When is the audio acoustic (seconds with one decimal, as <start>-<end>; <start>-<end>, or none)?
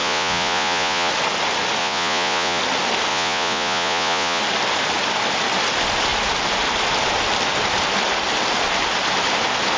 1.1-1.8; 2.6-3.1; 4.4-9.8